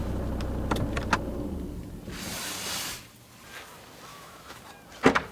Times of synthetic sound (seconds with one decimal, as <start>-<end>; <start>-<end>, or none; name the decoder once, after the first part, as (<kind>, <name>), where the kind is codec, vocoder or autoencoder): 4.1-4.6 (autoencoder, DAC-VAE)